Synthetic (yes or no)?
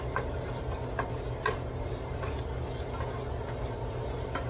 no